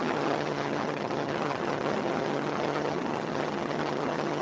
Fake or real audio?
fake